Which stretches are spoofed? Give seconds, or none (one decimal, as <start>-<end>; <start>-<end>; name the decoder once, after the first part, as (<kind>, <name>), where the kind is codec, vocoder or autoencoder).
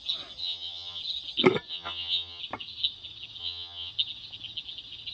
0.4-1.0 (vocoder, HiFi-GAN); 1.7-2.4; 3.4-3.9